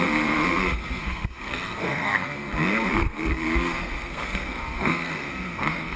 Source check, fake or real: fake